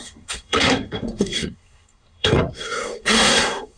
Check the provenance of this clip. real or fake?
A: fake